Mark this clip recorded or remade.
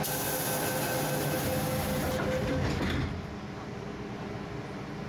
recorded